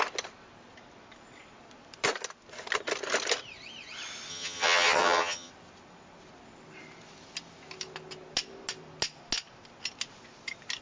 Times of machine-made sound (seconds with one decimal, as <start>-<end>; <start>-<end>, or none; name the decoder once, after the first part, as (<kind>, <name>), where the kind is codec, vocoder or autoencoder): 4.3-5.5 (vocoder, HiFi-GAN)